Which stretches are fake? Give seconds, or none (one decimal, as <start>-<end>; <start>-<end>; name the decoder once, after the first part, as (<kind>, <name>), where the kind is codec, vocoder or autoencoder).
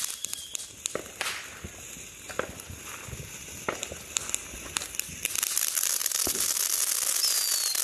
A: 6.0-6.5 (vocoder, BigVGAN v2)